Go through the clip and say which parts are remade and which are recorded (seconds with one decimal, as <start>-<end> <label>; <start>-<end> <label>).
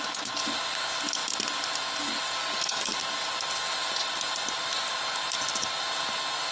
0.0-2.4 recorded; 2.4-2.9 remade; 2.9-6.5 recorded